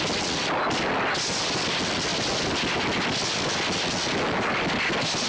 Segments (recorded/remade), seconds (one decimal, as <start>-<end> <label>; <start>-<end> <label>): 0.0-5.3 recorded